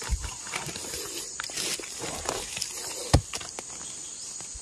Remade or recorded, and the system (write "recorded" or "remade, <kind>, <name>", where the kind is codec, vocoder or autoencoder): recorded